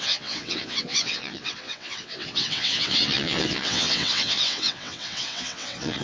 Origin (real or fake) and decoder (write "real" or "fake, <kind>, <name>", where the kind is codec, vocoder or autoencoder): fake, vocoder, WaveNeXt